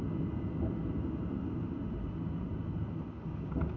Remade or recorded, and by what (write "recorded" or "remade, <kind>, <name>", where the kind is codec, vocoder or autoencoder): recorded